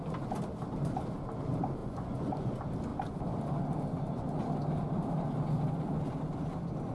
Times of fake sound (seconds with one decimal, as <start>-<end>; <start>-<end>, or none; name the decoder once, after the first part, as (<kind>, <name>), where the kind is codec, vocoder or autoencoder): 1.8-2.5 (vocoder, Vocos)